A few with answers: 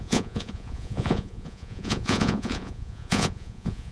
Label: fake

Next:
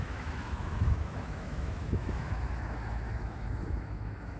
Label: fake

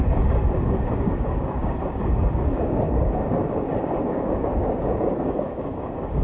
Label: fake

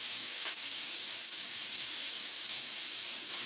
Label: fake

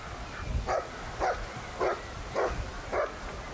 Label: real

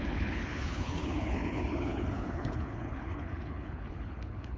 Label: fake